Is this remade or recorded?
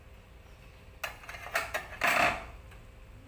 recorded